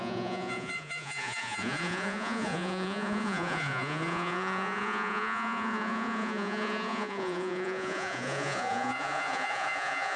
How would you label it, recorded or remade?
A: remade